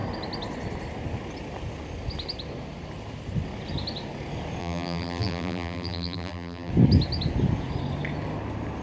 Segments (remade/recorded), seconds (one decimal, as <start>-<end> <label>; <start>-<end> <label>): 0.0-4.6 recorded; 4.6-6.7 remade; 6.7-8.8 recorded